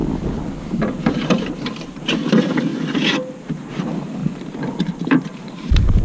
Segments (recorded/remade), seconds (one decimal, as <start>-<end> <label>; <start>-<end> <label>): 0.0-0.6 recorded; 0.6-2.7 remade; 2.7-3.3 recorded; 3.3-6.0 remade